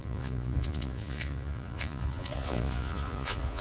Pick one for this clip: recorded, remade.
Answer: remade